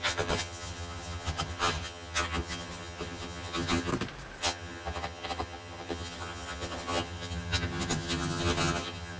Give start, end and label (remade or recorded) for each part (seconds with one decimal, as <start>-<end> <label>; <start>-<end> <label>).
0.0-3.9 remade; 3.9-4.4 recorded; 4.4-9.2 remade

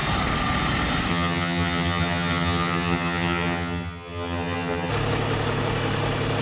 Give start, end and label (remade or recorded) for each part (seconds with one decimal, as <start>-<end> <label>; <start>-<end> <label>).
0.0-1.1 recorded; 1.1-4.9 remade; 4.9-6.4 recorded

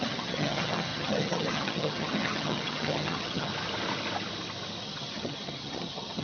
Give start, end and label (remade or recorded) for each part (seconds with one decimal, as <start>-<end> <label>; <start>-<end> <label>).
0.0-3.5 remade; 3.5-4.8 recorded; 4.8-6.2 remade

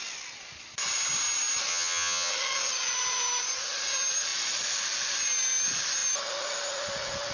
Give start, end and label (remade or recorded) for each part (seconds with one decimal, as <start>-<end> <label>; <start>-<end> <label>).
0.0-1.7 recorded; 1.7-2.3 remade; 2.3-7.3 recorded

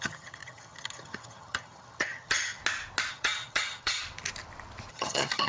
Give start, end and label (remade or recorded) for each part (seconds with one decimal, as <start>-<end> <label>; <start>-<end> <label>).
0.0-2.6 remade; 2.6-3.1 recorded; 3.1-4.0 remade; 4.0-4.9 recorded; 4.9-5.5 remade